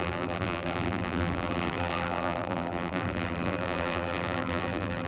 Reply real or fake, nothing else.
fake